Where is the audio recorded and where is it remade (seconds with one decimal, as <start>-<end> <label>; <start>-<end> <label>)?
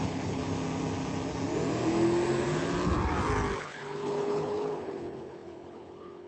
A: 0.0-0.4 remade; 0.4-3.6 recorded; 3.6-6.3 remade